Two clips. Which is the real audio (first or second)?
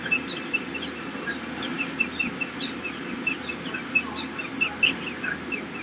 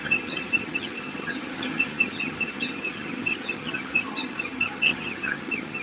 first